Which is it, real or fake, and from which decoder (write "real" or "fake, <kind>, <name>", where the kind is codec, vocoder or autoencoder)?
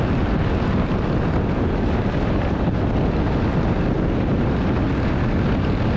real